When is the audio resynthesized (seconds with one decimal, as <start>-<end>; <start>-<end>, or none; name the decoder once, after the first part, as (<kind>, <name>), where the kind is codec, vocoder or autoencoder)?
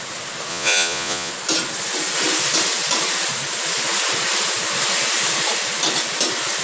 0.5-1.3 (vocoder, Vocos)